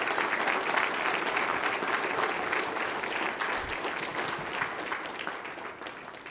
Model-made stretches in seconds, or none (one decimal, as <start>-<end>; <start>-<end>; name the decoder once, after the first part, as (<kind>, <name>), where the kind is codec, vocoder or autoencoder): none